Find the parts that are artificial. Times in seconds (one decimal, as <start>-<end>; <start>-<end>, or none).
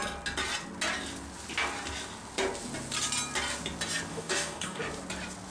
4.1-4.8